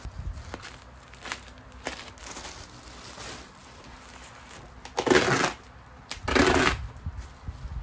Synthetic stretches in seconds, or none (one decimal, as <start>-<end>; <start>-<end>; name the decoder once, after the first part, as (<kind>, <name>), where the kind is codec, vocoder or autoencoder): none